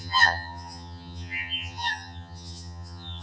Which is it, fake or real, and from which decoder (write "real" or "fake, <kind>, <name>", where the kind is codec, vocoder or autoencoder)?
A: fake, vocoder, HiFi-GAN